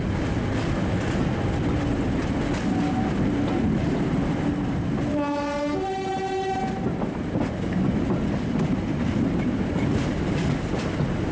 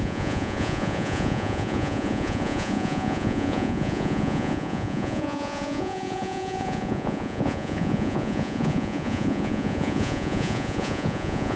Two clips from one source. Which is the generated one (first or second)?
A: second